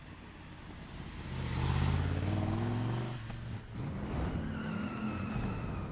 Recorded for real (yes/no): yes